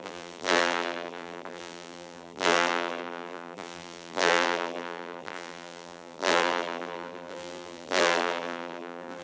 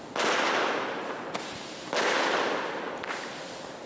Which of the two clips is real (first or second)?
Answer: second